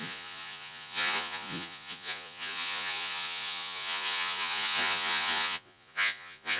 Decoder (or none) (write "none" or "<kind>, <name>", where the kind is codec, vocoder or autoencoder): vocoder, Vocos